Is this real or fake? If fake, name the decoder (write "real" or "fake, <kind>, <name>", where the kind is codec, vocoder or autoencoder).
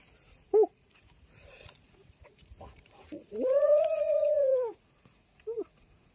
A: fake, vocoder, Vocos